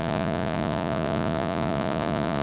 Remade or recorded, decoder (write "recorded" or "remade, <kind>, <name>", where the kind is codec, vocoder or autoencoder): remade, vocoder, Vocos